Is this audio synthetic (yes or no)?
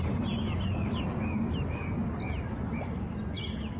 no